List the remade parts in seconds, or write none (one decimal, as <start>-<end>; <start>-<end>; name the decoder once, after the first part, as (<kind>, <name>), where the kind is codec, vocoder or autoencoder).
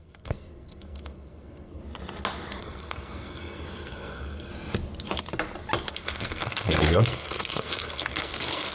0.0-1.8 (codec, SNAC); 2.6-4.5; 5.9-8.7